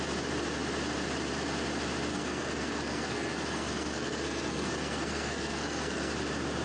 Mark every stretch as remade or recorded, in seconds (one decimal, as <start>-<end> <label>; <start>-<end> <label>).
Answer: 0.0-2.1 recorded; 2.1-6.1 remade; 6.1-6.6 recorded